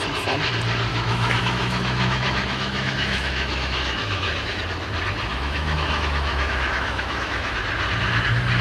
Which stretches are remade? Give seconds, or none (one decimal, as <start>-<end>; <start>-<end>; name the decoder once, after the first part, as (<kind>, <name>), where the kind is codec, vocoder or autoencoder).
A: 0.9-4.6 (autoencoder, DAC-VAE); 5.3-7.5